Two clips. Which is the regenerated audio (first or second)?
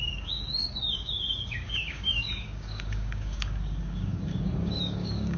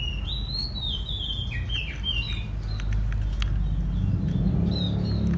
first